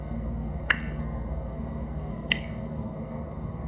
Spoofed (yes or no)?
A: yes